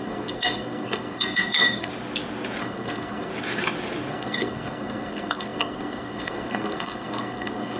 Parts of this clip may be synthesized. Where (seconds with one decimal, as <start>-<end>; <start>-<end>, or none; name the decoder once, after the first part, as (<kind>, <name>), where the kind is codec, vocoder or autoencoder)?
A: 0.0-1.9 (codec, SNAC); 2.6-3.3; 4.1-7.8